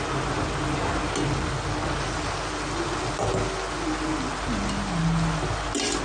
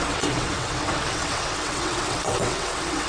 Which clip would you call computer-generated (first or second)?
second